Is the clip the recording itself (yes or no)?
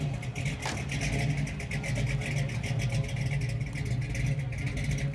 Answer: yes